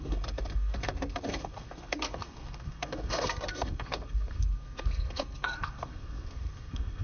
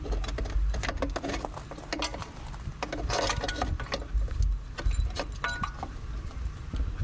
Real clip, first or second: second